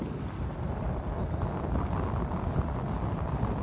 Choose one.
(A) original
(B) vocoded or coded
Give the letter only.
A